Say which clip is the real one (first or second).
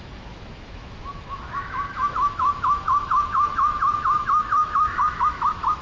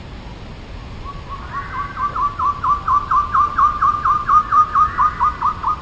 second